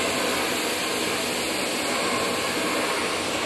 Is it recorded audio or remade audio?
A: recorded